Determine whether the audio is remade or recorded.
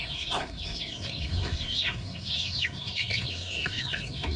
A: remade